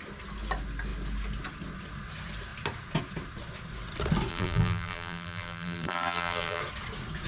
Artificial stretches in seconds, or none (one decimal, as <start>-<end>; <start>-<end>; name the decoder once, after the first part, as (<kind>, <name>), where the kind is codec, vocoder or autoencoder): 4.3-6.6 (vocoder, BigVGAN v2)

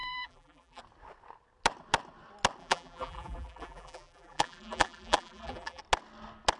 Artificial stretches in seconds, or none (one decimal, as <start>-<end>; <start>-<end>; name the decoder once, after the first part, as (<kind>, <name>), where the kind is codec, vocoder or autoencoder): 0.0-0.8 (vocoder, BigVGAN v2); 2.6-5.8